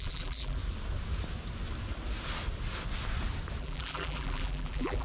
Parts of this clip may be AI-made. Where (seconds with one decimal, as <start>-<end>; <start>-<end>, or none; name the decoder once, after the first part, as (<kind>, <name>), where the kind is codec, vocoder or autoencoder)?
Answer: 0.0-0.6 (vocoder, BigVGAN v2); 3.6-5.0